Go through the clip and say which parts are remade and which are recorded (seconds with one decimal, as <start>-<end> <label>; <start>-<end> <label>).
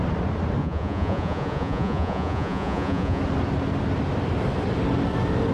0.0-0.6 recorded; 0.6-3.2 remade; 3.2-5.5 recorded